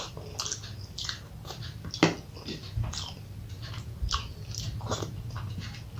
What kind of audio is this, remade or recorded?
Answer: recorded